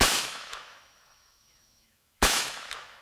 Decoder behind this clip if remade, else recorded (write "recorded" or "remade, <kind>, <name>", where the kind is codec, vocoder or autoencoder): remade, autoencoder, DAC-VAE